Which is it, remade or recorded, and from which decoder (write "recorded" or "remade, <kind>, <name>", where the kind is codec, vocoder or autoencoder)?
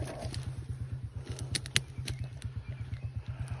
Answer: recorded